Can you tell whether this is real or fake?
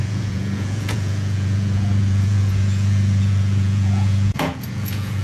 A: fake